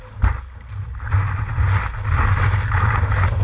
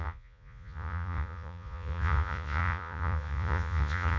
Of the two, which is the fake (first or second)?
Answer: second